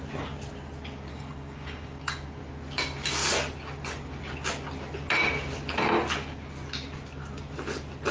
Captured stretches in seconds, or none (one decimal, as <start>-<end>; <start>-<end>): 0.0-1.1; 2.4-8.1